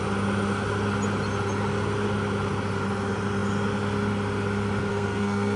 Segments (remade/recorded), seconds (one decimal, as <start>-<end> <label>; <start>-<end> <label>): 0.0-4.9 recorded; 4.9-5.6 remade